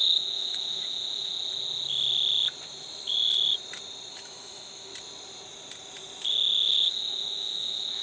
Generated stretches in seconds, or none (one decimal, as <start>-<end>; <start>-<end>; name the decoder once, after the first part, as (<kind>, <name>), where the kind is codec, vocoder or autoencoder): 0.0-1.3 (autoencoder, DAC-VAE); 4.1-4.9; 6.3-8.0